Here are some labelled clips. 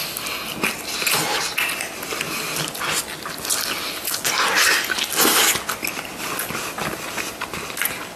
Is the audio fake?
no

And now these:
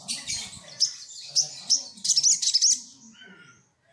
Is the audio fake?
no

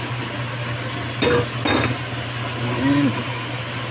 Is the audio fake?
no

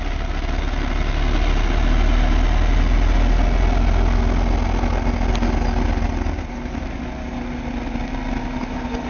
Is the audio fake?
no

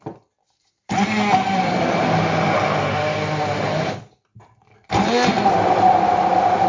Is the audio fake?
no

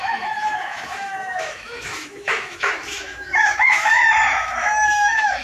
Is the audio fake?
yes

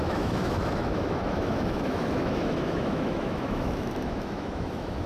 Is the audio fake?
yes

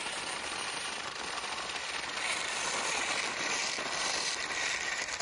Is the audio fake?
no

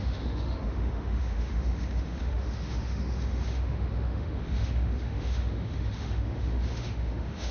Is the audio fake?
yes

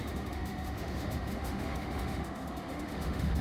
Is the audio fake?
yes